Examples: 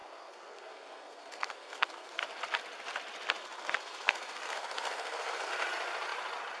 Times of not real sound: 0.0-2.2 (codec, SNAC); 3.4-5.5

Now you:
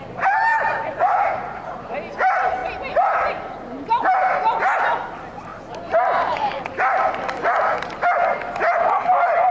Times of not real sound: 0.5-1.8 (vocoder, Vocos)

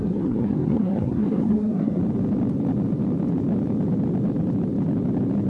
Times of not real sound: 0.0-2.0 (codec, SNAC)